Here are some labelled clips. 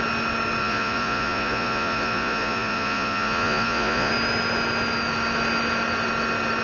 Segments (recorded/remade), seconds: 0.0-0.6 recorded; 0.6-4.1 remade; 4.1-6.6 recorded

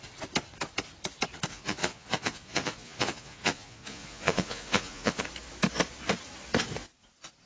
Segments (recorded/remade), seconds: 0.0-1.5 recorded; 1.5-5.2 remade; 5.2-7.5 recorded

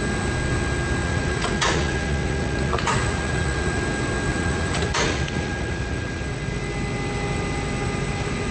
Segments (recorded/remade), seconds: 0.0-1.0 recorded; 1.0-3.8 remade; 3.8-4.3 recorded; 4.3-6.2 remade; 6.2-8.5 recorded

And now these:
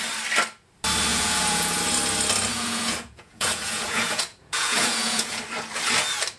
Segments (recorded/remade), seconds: 0.0-1.1 recorded; 1.1-1.8 remade; 1.8-2.5 recorded; 2.5-5.4 remade; 5.4-6.4 recorded

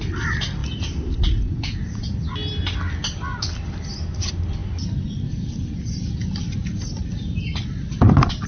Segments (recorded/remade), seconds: 0.0-8.5 recorded

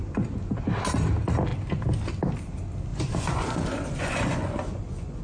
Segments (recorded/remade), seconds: 0.0-2.9 recorded; 2.9-5.2 remade